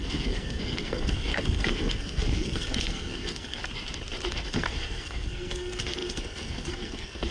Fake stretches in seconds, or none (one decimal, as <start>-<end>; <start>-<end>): 0.0-3.6; 4.3-7.3